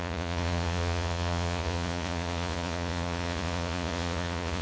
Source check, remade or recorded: remade